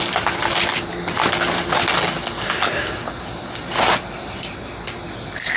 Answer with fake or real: real